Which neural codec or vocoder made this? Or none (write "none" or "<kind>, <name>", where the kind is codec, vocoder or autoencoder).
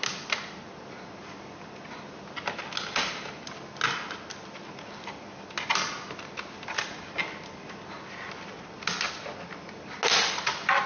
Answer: none